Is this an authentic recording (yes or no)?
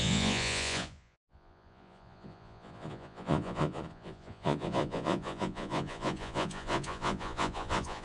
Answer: no